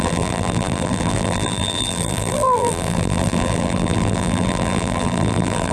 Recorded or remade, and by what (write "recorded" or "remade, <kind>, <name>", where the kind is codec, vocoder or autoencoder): remade, vocoder, BigVGAN v2